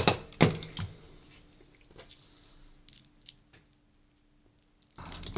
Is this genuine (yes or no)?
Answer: yes